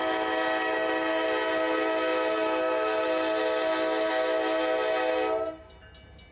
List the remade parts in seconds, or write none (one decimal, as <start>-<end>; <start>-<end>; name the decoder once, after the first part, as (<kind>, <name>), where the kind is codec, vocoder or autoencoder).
none